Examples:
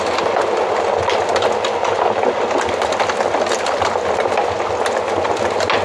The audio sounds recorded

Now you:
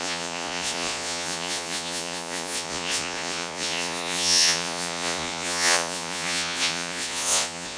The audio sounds remade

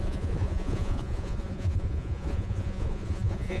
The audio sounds remade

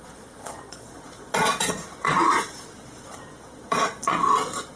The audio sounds remade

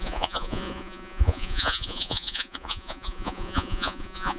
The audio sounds remade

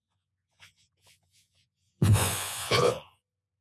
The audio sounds remade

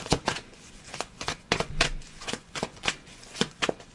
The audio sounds remade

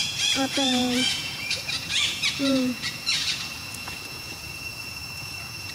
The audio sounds remade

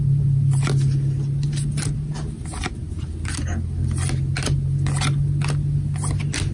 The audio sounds recorded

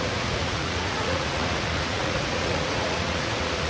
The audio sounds remade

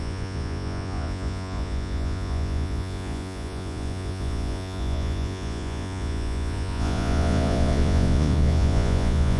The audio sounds remade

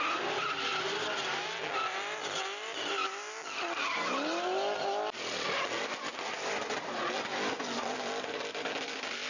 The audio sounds recorded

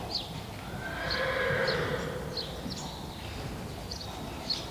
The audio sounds recorded